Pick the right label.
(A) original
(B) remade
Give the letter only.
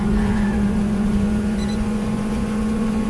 B